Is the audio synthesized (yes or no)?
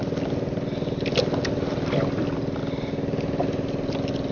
no